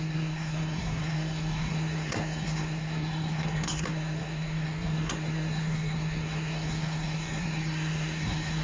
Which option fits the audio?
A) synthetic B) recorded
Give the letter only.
A